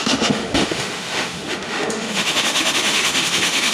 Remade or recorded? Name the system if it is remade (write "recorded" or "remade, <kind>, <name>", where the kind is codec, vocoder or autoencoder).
remade, autoencoder, DAC-VAE